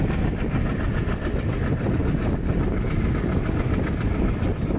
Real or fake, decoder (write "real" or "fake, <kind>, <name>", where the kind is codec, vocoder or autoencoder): real